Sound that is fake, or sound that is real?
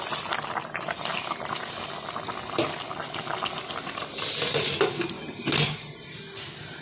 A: real